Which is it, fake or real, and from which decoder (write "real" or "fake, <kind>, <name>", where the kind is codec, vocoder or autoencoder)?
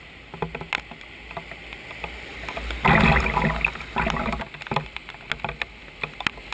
real